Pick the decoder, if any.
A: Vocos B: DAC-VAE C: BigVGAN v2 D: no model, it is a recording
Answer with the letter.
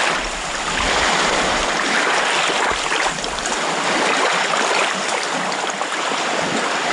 D